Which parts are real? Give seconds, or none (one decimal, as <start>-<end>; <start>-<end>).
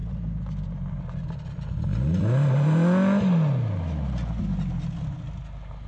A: 0.0-5.9